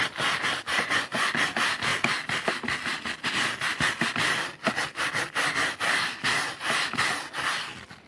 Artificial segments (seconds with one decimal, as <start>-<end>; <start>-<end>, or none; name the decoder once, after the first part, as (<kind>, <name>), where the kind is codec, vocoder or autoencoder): 0.7-1.3 (vocoder, Vocos)